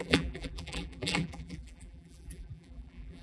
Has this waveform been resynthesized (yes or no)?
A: yes